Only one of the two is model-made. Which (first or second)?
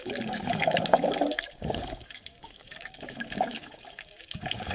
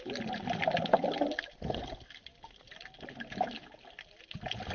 first